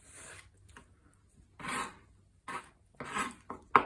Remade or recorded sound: recorded